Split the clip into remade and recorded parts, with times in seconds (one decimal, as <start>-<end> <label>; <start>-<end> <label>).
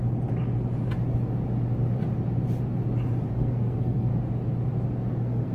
0.0-3.3 recorded; 3.3-4.1 remade; 4.1-5.1 recorded; 5.1-5.5 remade